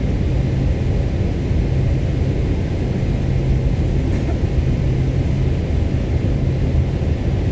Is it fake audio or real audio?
real